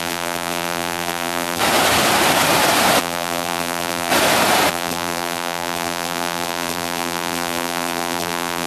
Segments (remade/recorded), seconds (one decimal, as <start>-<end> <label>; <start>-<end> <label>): 0.0-1.6 remade; 1.6-3.0 recorded; 3.0-4.1 remade; 4.1-4.7 recorded; 4.7-8.7 remade